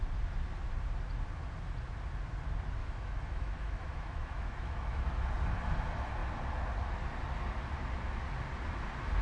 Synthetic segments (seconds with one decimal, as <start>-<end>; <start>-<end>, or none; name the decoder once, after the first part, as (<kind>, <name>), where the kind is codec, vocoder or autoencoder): 2.8-5.0 (autoencoder, DAC-VAE)